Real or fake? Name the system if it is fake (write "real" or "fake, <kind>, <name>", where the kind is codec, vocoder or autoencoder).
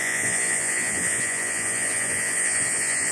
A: fake, vocoder, Vocos